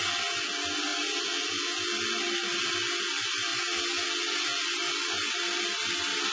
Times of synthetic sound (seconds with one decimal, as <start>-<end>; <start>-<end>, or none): none

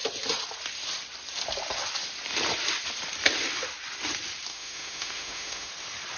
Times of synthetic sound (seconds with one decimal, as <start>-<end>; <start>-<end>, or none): 4.5-5.7